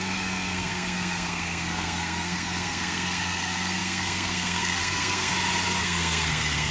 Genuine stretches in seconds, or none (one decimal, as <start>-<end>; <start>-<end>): 5.3-5.8